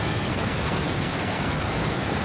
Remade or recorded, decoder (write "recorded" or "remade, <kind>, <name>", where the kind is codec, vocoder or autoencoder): remade, codec, SNAC